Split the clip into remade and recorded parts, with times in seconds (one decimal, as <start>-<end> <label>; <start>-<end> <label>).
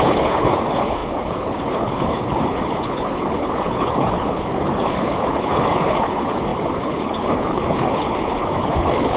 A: 0.0-9.2 remade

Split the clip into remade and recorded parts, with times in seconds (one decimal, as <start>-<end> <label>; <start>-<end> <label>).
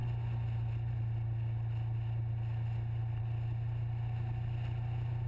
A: 0.0-5.3 recorded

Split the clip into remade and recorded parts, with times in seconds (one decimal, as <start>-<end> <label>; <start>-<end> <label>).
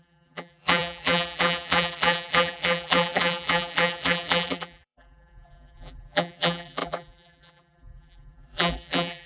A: 0.0-9.3 remade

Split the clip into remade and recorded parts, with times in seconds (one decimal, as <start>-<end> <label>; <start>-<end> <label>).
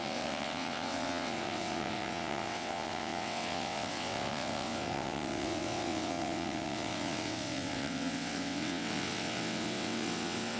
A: 0.0-10.6 remade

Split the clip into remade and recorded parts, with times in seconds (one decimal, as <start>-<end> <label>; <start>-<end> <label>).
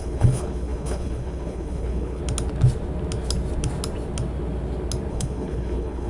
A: 0.0-2.2 remade; 2.2-5.1 recorded; 5.1-6.1 remade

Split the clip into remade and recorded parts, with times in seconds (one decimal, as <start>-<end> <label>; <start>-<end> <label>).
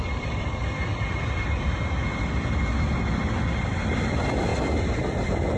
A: 0.0-0.9 remade; 0.9-3.6 recorded; 3.6-5.6 remade